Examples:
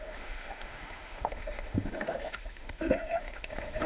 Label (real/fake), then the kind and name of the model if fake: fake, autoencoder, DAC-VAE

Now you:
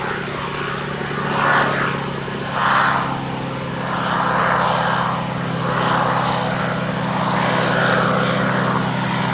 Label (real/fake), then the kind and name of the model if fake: real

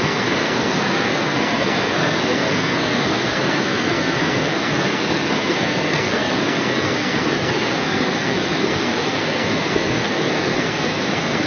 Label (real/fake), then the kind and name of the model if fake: fake, codec, SNAC